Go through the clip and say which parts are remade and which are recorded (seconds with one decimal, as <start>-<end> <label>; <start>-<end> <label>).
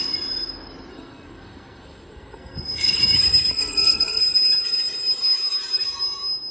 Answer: 0.0-0.9 recorded; 0.9-3.0 remade; 3.0-3.6 recorded; 3.6-4.2 remade; 4.2-6.5 recorded